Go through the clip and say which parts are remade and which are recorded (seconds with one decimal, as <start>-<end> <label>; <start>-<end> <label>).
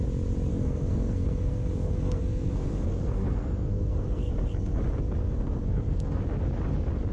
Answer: 0.0-0.5 recorded; 0.5-4.8 remade; 4.8-5.2 recorded; 5.2-6.2 remade; 6.2-7.1 recorded